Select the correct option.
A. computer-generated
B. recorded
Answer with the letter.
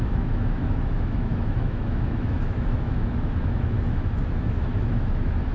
A